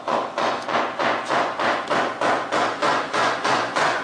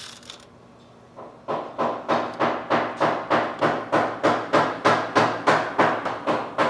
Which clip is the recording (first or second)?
second